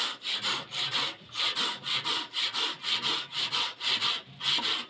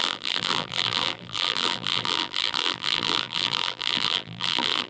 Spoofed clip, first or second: second